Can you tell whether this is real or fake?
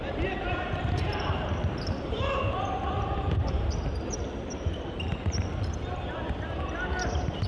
fake